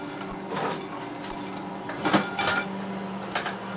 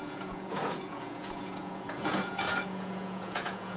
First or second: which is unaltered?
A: first